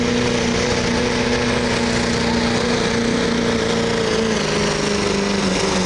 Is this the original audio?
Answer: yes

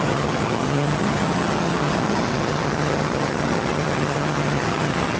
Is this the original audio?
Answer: no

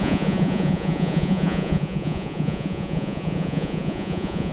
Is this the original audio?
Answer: no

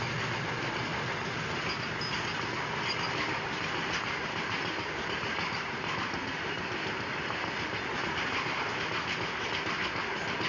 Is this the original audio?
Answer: yes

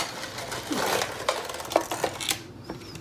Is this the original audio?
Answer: yes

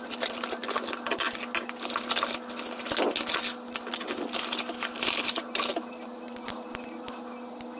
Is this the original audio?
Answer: yes